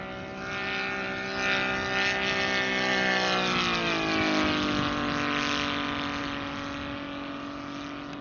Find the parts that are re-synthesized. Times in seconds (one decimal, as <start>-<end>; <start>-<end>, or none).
none